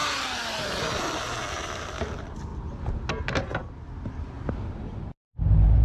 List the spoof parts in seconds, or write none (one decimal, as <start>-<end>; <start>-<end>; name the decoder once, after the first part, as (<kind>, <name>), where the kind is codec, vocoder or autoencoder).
1.5-2.5 (vocoder, BigVGAN v2); 3.2-3.6; 5.3-5.8